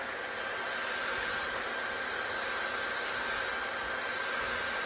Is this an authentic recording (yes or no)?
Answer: yes